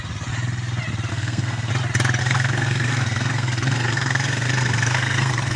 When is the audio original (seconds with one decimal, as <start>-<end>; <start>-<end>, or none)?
0.0-1.1; 1.7-2.2